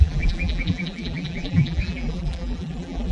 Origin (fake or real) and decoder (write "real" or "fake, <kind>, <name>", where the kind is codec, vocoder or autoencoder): fake, vocoder, BigVGAN v2